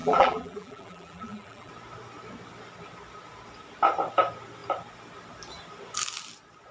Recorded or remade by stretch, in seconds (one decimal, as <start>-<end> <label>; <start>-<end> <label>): 0.0-1.7 remade; 1.7-6.7 recorded